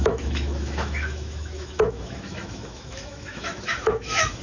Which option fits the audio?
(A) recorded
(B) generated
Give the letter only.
B